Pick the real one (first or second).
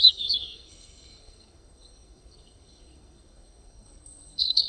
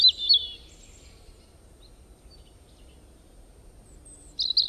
second